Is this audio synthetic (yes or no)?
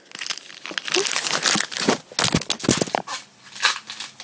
no